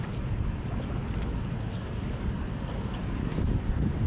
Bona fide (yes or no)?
yes